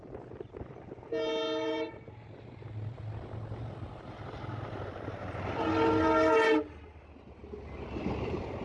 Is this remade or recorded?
recorded